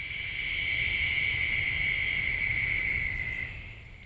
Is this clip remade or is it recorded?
recorded